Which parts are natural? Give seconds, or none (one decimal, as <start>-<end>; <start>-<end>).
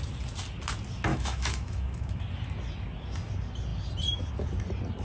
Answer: 0.0-1.1; 2.2-5.0